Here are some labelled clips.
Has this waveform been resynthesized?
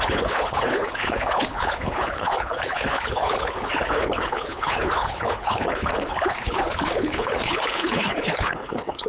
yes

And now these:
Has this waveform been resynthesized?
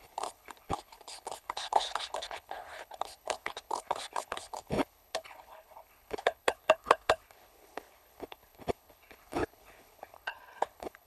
yes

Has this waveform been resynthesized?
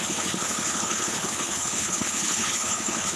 yes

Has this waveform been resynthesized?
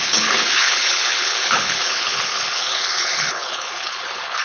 yes